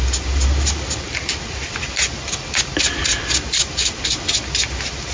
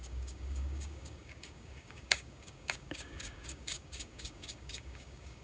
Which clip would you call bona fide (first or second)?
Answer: first